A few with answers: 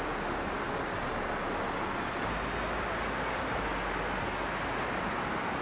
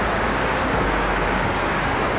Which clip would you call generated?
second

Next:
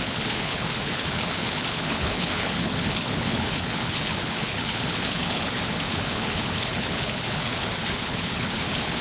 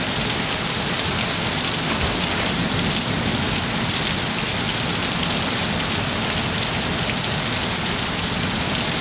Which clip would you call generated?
first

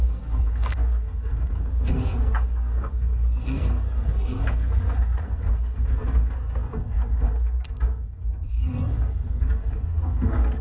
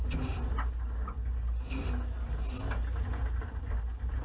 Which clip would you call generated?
first